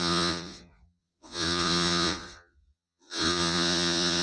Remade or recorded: remade